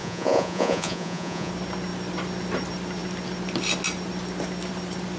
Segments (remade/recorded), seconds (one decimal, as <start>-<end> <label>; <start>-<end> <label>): 0.0-1.5 remade; 1.5-5.2 recorded